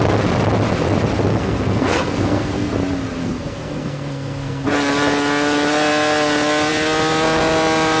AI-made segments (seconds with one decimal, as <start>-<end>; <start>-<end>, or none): 1.3-2.7; 3.2-4.7